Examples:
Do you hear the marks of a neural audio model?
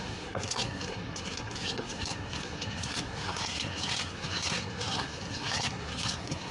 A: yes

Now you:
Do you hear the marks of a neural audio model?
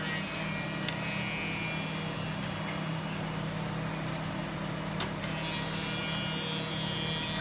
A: no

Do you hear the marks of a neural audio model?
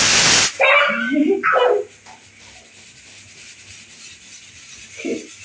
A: no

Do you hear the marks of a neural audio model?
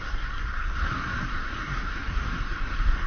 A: yes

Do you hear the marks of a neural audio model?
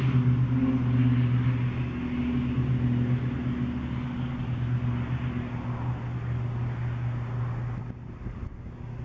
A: no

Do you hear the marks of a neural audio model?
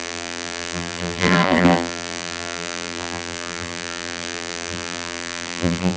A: yes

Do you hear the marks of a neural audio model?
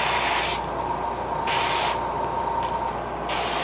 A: no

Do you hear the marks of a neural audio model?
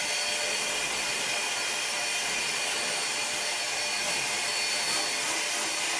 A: no